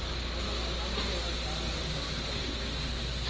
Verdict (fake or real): real